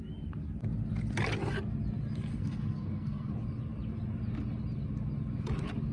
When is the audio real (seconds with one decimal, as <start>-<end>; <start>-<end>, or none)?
0.0-2.3; 3.3-5.9